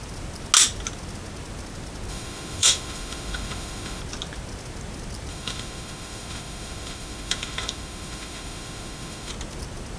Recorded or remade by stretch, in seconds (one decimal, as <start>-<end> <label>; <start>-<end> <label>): 0.0-2.1 recorded; 2.1-4.0 remade; 4.0-5.3 recorded; 5.3-9.3 remade; 9.3-10.0 recorded